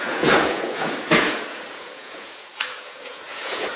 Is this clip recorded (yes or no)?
no